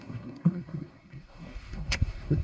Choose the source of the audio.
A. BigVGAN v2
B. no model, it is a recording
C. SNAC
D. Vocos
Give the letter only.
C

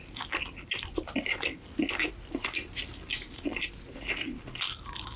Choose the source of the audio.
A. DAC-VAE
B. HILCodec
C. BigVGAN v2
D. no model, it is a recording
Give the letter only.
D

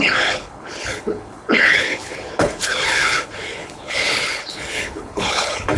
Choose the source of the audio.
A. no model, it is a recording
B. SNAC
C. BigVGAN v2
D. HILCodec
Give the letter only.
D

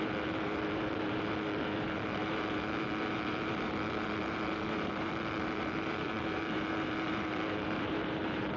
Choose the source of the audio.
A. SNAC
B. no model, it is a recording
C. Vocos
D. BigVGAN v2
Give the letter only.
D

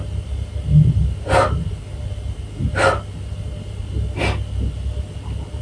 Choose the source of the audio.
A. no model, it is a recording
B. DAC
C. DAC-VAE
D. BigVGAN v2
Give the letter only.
A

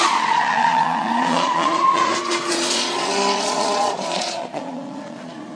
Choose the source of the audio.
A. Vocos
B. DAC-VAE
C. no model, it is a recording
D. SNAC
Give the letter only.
A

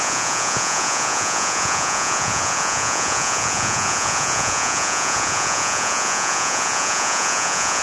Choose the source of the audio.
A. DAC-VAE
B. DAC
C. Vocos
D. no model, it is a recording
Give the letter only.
C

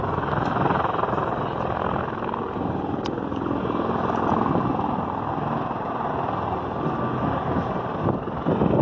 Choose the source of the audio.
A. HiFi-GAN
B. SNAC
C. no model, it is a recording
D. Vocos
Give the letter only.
C